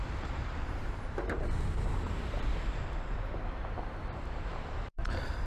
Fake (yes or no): yes